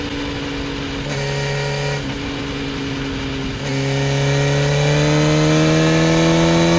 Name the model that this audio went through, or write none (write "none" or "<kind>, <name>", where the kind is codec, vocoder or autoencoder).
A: none